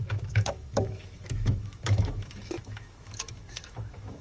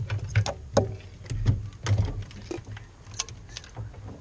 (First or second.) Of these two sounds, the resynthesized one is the first